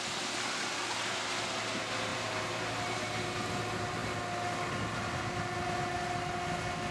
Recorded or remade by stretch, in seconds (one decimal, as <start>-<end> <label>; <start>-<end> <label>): 0.0-2.1 recorded; 2.1-3.0 remade; 3.0-6.9 recorded